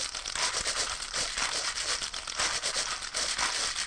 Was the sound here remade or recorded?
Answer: recorded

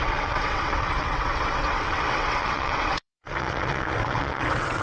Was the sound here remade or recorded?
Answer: remade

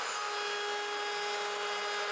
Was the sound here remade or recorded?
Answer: recorded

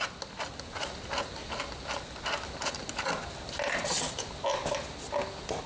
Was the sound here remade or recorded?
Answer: recorded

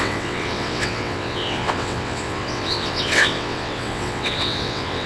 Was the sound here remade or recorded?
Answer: remade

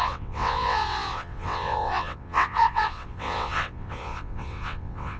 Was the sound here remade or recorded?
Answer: remade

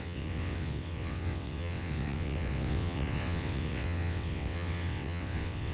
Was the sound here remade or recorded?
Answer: remade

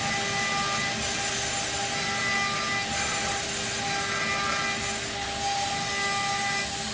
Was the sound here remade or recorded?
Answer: recorded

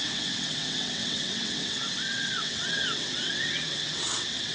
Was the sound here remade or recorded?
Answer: remade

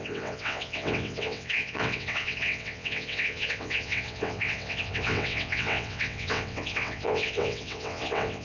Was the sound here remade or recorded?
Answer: remade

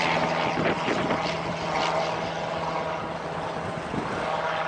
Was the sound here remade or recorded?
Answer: recorded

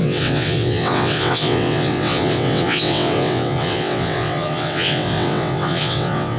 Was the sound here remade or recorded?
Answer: remade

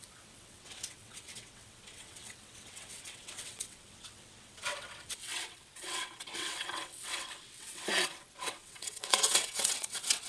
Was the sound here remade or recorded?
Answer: remade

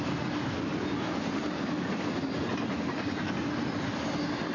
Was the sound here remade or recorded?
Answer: recorded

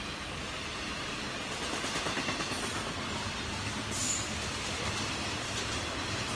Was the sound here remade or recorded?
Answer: recorded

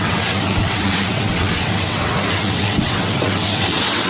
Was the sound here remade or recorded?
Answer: remade